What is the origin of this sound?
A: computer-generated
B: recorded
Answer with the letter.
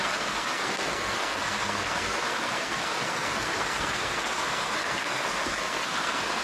A